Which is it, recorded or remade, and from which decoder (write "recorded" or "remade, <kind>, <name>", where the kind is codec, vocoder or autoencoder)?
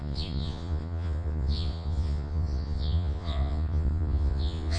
remade, vocoder, Vocos